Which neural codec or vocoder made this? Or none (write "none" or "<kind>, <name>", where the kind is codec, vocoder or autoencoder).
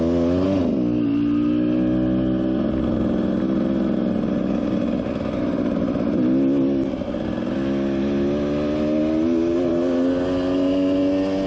none